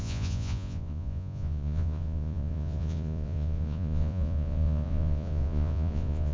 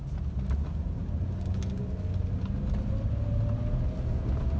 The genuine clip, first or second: second